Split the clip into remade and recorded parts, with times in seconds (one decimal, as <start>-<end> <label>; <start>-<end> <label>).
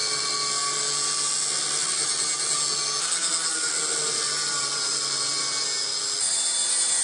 0.0-7.0 recorded